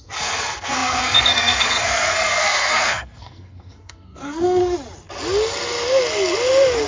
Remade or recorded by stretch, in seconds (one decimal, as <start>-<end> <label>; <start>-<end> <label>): 0.0-4.6 remade; 4.6-6.9 recorded